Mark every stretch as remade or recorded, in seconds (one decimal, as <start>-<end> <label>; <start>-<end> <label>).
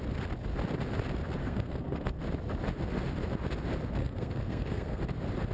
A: 0.0-1.4 recorded; 1.4-2.2 remade; 2.2-4.0 recorded; 4.0-5.0 remade; 5.0-5.5 recorded